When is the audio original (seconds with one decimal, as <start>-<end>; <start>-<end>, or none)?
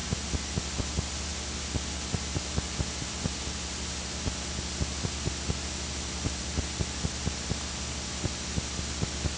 0.0-9.4